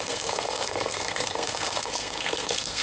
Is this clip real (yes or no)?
no